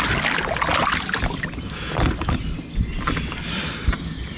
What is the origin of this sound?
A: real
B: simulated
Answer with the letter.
A